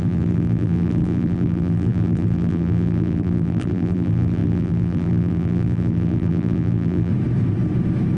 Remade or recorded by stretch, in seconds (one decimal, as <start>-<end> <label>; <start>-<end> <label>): 0.0-7.1 remade; 7.1-8.2 recorded